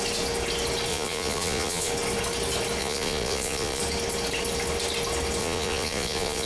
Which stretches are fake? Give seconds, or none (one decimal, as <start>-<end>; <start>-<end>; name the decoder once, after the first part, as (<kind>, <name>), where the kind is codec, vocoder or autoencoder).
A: 0.9-1.9 (vocoder, Vocos); 2.8-3.8; 5.4-6.5